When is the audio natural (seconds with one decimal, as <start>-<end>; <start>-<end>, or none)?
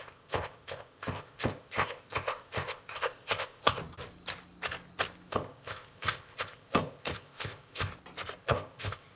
3.8-5.3; 7.9-8.4